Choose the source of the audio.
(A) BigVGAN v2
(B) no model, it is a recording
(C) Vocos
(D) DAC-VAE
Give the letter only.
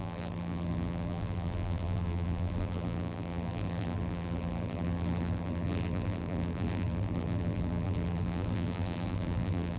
A